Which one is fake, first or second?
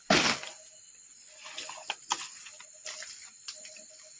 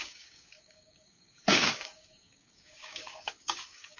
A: second